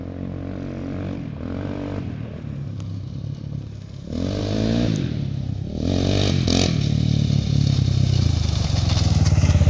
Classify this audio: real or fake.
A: real